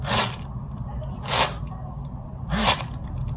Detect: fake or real real